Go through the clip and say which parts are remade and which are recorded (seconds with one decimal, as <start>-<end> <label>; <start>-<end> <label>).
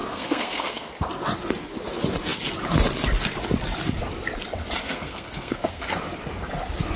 0.0-1.1 remade; 1.1-4.8 recorded; 4.8-5.8 remade; 5.8-7.0 recorded